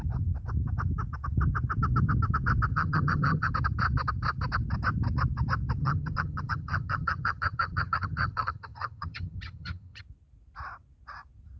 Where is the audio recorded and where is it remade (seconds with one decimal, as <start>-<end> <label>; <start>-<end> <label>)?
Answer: 0.0-2.7 recorded; 2.7-3.5 remade; 3.5-5.8 recorded; 5.8-10.0 remade; 10.0-11.6 recorded